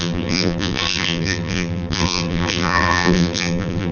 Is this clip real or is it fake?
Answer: fake